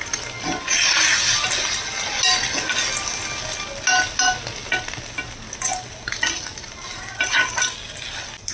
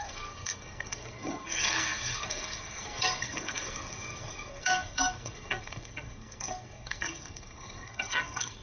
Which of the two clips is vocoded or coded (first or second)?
second